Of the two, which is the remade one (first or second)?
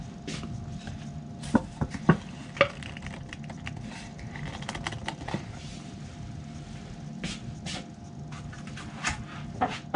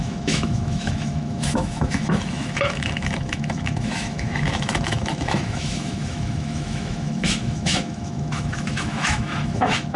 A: second